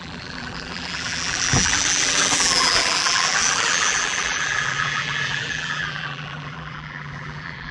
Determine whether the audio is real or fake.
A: fake